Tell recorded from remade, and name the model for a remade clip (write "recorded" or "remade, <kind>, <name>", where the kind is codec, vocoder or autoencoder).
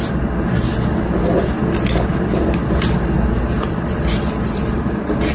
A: recorded